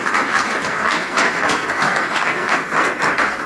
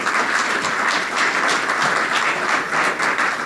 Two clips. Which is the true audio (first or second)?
second